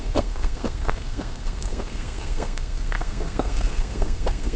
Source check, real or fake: fake